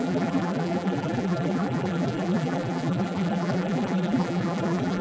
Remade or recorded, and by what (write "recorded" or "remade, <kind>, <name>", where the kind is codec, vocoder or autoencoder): remade, vocoder, BigVGAN v2